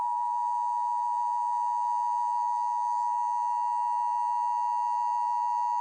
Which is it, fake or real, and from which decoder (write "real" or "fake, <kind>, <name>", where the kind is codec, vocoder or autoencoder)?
real